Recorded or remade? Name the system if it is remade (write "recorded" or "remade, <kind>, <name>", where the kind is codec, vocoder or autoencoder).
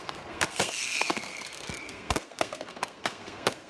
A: remade, codec, SNAC